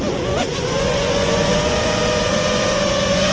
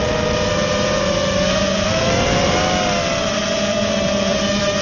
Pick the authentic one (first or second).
second